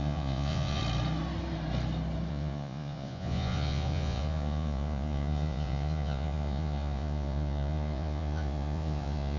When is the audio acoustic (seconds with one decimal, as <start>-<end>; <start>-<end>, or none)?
0.8-2.3